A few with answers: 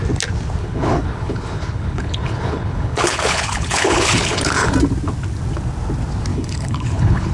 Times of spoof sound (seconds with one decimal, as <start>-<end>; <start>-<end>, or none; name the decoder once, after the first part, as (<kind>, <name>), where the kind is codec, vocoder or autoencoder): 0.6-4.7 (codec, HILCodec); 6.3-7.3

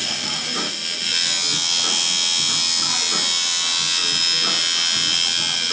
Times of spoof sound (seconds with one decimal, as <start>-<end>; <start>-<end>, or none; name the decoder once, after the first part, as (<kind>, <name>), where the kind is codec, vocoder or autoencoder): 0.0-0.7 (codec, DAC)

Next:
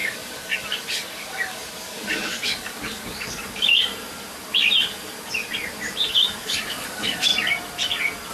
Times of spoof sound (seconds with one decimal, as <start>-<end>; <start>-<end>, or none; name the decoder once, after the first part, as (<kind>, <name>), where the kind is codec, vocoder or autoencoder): 0.0-3.9 (codec, DAC); 6.1-7.3

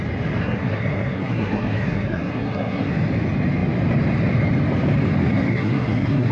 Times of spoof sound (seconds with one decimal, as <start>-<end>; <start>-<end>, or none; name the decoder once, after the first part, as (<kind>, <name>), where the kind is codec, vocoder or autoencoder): 0.4-2.9 (codec, SNAC); 5.5-6.3

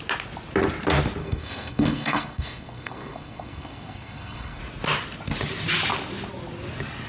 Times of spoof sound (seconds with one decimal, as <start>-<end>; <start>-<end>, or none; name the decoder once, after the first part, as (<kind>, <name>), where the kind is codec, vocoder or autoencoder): 1.2-4.6 (codec, SNAC)